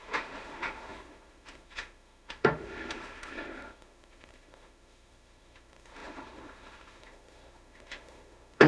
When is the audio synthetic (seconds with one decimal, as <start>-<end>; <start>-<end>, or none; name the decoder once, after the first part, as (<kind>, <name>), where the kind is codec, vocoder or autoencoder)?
0.0-8.7 (autoencoder, DAC-VAE)